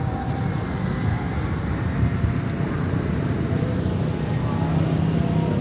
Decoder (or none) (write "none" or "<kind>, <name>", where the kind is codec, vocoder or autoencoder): none